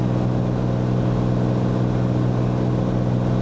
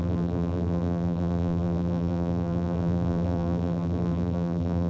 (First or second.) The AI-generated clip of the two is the second